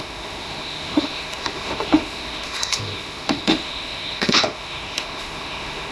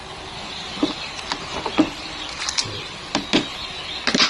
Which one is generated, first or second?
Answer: first